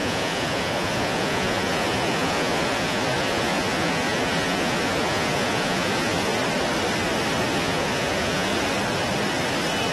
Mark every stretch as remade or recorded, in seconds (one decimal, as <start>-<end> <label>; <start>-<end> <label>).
0.0-6.3 remade; 6.3-7.5 recorded; 7.5-8.5 remade; 8.5-9.9 recorded